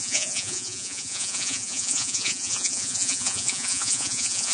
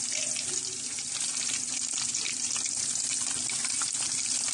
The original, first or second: second